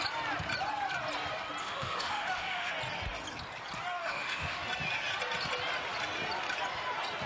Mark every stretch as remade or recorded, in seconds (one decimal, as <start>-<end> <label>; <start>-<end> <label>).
0.0-1.6 recorded; 1.6-2.7 remade; 2.7-4.0 recorded; 4.0-4.6 remade; 4.6-7.3 recorded